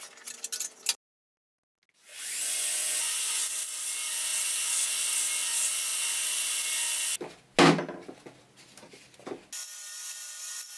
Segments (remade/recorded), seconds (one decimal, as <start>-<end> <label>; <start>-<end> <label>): 0.0-2.1 recorded; 2.1-3.5 remade; 3.5-10.8 recorded